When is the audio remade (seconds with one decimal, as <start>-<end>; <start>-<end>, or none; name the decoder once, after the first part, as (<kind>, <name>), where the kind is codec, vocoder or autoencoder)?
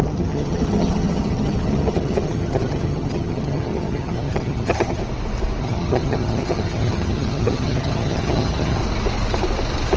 0.0-5.0 (vocoder, HiFi-GAN); 5.6-8.8